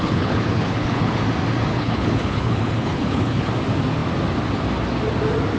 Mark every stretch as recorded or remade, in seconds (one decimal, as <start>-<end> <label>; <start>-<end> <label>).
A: 0.0-1.2 remade; 1.2-1.7 recorded; 1.7-3.5 remade; 3.5-5.6 recorded